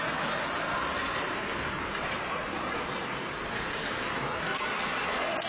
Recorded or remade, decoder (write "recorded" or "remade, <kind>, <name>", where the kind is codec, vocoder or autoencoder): recorded